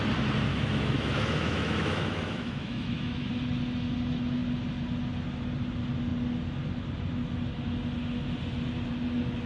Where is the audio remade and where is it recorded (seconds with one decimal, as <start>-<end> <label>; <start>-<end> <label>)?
0.0-0.5 recorded; 0.5-3.3 remade; 3.3-9.5 recorded